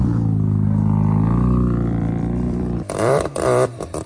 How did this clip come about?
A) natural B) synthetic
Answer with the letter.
B